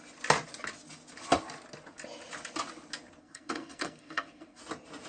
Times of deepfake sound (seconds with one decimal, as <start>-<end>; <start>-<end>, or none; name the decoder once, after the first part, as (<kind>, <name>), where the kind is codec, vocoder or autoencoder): 3.2-4.6 (codec, SNAC)